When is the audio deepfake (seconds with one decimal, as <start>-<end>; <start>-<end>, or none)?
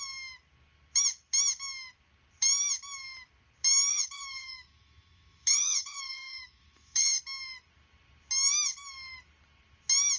3.9-7.2